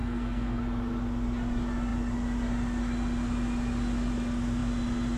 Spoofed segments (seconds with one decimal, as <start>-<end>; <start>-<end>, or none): 0.0-0.6